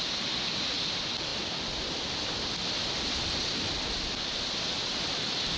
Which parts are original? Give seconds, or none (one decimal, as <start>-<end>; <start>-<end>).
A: 0.0-5.6